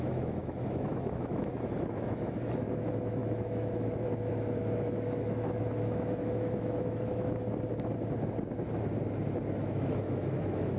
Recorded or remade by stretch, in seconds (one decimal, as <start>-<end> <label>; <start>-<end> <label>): 0.0-7.4 remade; 7.4-9.6 recorded; 9.6-10.8 remade